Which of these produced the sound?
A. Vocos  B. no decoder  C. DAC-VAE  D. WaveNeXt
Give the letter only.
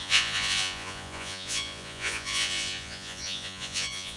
A